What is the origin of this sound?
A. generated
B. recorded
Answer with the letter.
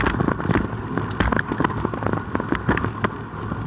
B